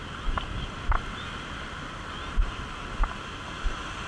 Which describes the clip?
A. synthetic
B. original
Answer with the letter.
B